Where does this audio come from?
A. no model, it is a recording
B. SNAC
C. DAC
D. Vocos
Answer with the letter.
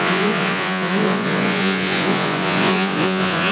D